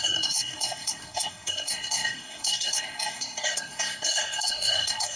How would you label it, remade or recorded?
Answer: remade